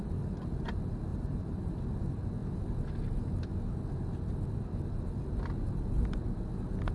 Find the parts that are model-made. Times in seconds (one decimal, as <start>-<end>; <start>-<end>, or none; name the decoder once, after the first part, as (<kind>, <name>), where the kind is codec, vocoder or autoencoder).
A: 1.1-1.8 (vocoder, BigVGAN v2)